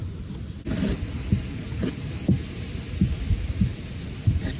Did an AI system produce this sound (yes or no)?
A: no